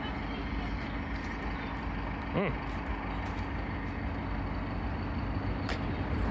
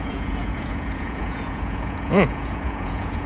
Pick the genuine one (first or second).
first